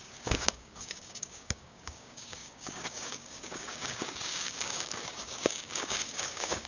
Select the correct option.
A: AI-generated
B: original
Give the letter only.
A